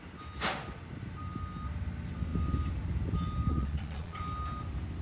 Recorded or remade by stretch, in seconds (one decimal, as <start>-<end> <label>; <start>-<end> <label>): 0.0-3.5 recorded; 3.5-4.2 remade; 4.2-5.0 recorded